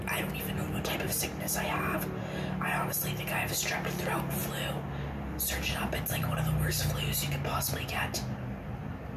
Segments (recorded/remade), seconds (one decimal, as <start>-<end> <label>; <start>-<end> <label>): 0.0-9.2 recorded